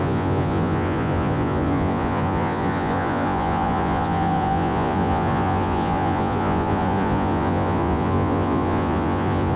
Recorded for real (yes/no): no